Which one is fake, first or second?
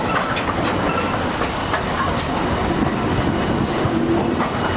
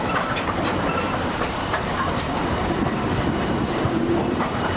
second